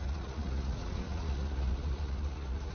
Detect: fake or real fake